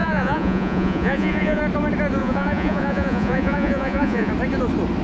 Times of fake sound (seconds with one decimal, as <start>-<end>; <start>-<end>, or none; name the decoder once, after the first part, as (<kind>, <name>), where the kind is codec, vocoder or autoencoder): 0.0-1.6 (vocoder, Vocos); 2.2-4.3